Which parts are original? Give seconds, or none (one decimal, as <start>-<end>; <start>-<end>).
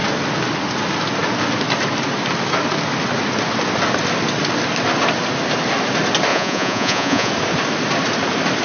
0.0-6.3; 7.3-8.6